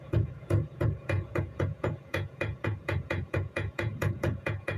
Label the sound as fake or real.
fake